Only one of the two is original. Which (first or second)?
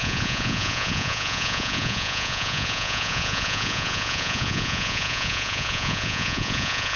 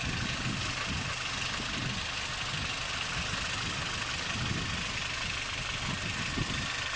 second